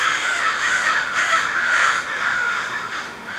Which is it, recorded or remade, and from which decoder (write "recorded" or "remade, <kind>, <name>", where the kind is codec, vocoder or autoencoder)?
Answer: remade, autoencoder, DAC-VAE